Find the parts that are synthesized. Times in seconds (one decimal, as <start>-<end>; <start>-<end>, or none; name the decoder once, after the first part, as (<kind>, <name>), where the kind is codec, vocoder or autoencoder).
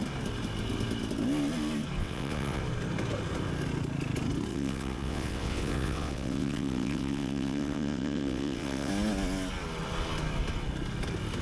2.0-2.6 (vocoder, WaveNeXt); 4.5-8.9